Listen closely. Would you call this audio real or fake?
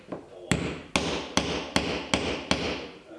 real